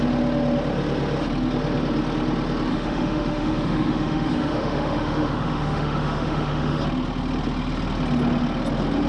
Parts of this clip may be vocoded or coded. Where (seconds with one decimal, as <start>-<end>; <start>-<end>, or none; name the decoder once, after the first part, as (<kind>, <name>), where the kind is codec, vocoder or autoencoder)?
2.7-6.8 (autoencoder, DAC-VAE)